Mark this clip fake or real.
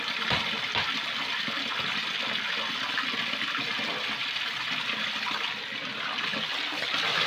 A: real